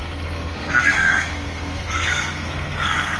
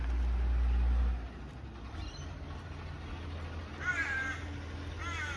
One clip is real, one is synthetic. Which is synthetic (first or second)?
first